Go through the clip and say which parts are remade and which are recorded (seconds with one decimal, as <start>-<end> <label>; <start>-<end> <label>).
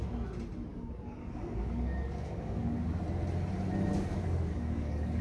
0.0-0.7 recorded; 0.7-3.0 remade; 3.0-3.9 recorded; 3.9-5.2 remade